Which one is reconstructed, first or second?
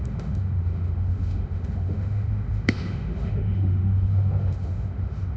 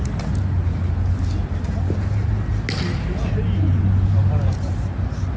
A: first